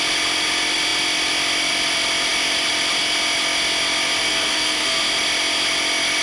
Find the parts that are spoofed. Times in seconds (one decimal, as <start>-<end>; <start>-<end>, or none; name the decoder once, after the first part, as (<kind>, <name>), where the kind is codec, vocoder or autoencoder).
4.2-5.0 (codec, SNAC)